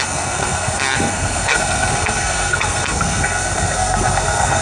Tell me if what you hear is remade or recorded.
remade